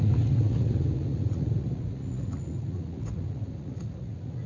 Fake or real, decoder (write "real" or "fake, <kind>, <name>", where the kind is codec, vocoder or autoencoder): fake, vocoder, Vocos